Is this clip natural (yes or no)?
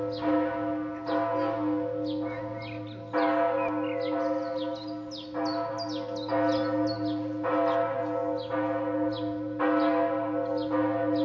yes